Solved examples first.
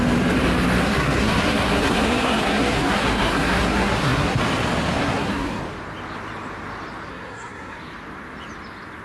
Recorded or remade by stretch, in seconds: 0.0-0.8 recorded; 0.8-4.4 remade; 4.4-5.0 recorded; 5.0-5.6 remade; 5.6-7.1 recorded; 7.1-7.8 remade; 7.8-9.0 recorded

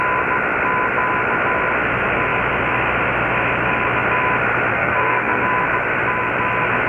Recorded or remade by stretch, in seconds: 0.0-4.7 recorded; 4.7-5.4 remade; 5.4-6.9 recorded

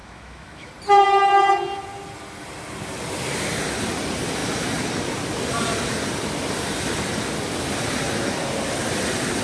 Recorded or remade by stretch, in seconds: 0.0-0.7 remade; 0.7-9.4 recorded

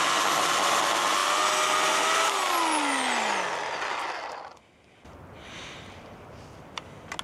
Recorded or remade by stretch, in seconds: 0.0-7.2 recorded

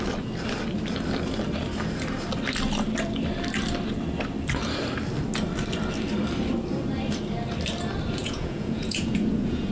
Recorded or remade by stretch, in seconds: 0.0-8.2 recorded; 8.2-9.7 remade